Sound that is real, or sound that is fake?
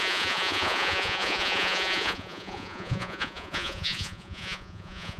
fake